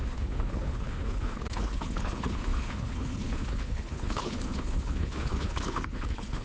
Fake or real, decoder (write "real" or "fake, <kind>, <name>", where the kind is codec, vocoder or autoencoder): fake, codec, HILCodec